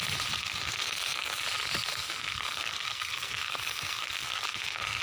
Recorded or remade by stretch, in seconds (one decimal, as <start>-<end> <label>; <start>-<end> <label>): 0.0-0.4 recorded; 0.4-1.4 remade; 1.4-1.9 recorded; 1.9-5.0 remade